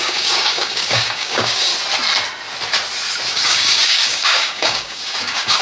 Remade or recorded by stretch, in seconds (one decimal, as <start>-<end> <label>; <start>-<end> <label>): 0.0-1.7 remade; 1.7-3.3 recorded; 3.3-5.6 remade